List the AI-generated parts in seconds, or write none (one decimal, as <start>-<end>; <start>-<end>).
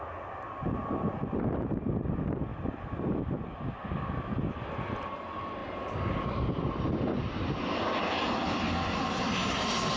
none